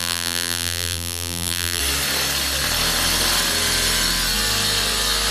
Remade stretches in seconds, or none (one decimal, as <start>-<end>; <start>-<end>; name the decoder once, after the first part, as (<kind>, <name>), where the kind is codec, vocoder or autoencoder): 0.0-1.8 (vocoder, BigVGAN v2)